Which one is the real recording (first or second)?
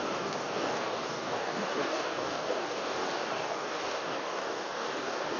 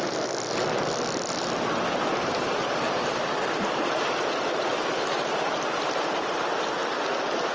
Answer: second